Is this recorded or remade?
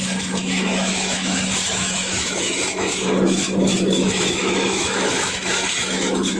remade